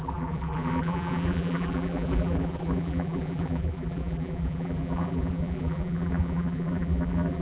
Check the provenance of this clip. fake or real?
fake